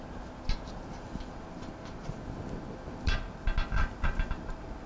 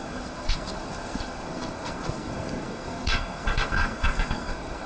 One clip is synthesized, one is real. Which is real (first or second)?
first